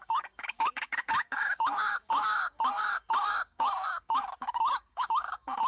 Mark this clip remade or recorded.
remade